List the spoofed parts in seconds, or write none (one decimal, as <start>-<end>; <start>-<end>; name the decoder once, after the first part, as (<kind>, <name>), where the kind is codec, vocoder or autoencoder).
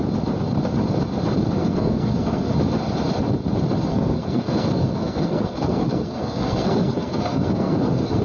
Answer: 1.6-2.5 (codec, SNAC); 3.9-8.2